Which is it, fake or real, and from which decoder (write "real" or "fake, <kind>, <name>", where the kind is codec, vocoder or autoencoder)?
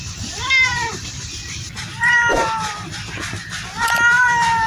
fake, vocoder, BigVGAN v2